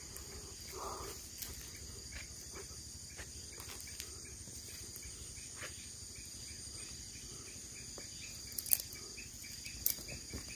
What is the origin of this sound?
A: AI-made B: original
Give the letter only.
B